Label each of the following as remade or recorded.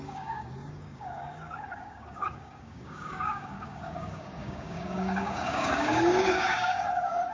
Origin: remade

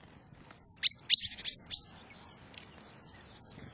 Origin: recorded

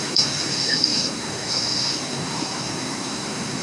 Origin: remade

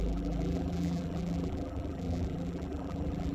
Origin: remade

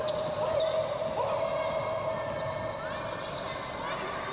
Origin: recorded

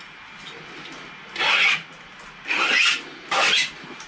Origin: recorded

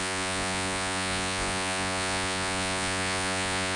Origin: remade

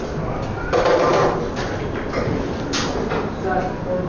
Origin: recorded